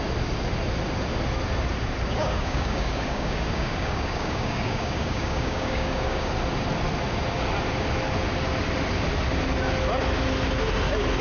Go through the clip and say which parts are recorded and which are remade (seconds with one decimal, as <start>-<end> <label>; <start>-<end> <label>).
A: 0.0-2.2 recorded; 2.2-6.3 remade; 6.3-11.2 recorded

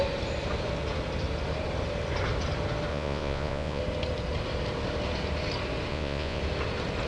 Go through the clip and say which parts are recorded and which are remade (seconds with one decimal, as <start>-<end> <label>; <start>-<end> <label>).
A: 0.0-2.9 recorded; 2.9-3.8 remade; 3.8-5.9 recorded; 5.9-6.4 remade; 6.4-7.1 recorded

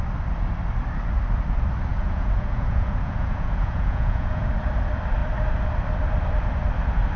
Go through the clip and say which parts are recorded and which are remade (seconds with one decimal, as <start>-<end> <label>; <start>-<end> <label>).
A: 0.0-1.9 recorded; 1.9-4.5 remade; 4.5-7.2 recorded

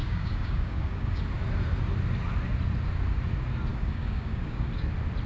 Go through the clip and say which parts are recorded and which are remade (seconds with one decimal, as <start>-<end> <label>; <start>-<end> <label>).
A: 0.0-1.2 remade; 1.2-3.7 recorded; 3.7-4.7 remade; 4.7-5.3 recorded